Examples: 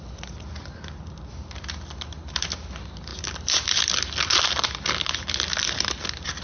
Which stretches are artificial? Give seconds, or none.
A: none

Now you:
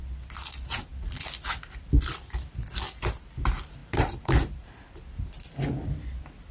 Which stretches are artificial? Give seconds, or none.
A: 3.8-4.7 (vocoder, BigVGAN v2)